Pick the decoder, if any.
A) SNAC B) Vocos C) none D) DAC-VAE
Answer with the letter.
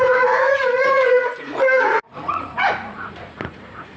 B